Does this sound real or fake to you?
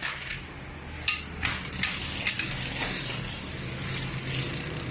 real